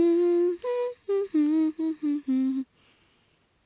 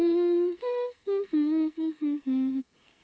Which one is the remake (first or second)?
second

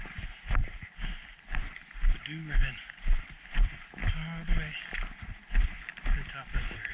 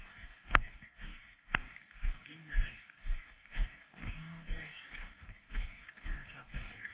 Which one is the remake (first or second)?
second